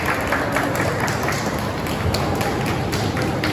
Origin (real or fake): real